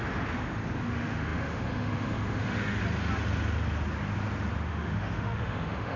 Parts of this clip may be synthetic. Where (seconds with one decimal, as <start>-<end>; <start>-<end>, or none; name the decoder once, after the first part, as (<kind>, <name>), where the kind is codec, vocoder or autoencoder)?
0.8-2.8 (autoencoder, DAC-VAE); 4.7-6.0